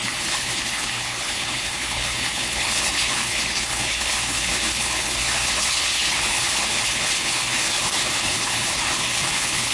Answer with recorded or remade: remade